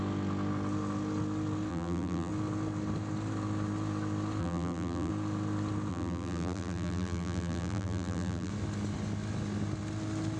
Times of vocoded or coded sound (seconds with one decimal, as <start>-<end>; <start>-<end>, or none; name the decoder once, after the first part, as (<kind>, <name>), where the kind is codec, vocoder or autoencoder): 1.7-2.3 (vocoder, BigVGAN v2); 4.4-5.1; 5.9-8.5